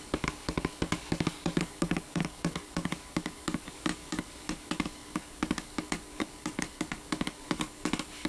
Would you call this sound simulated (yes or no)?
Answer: yes